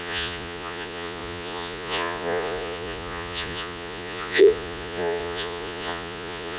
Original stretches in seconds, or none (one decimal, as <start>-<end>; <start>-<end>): none